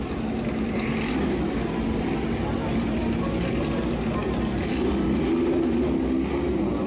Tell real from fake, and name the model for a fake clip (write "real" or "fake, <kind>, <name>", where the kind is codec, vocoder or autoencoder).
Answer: real